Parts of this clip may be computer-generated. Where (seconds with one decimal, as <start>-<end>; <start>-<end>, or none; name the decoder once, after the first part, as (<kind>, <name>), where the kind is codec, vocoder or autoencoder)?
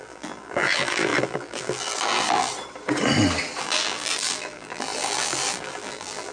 0.0-2.5 (vocoder, BigVGAN v2); 3.6-6.3